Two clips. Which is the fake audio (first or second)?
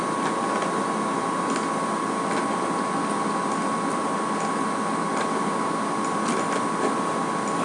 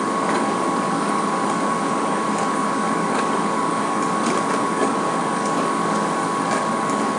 second